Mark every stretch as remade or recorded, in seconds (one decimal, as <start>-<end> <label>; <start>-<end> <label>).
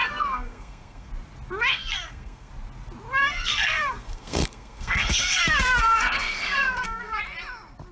0.0-1.1 remade; 1.1-1.7 recorded; 1.7-2.5 remade; 2.5-3.2 recorded; 3.2-7.2 remade; 7.2-7.9 recorded